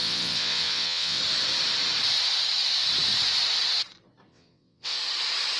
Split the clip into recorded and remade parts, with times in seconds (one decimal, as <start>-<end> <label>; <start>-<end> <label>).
0.0-1.2 remade; 1.2-4.3 recorded; 4.3-5.0 remade; 5.0-5.6 recorded